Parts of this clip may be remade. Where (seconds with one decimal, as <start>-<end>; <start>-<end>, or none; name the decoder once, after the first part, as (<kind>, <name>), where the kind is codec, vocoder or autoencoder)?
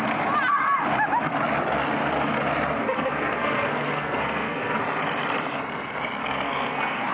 2.8-4.8 (codec, SNAC); 6.2-7.1